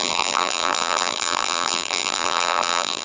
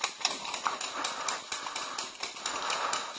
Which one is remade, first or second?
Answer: first